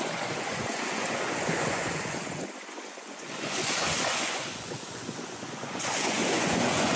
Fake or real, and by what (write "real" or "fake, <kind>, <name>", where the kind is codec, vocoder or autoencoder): fake, vocoder, Vocos